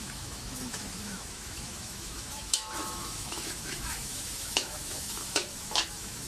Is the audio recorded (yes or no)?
no